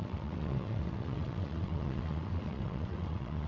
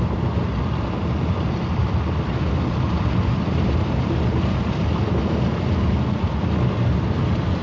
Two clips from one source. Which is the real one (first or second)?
second